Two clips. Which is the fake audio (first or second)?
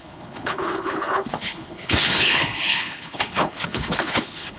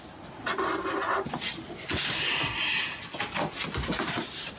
first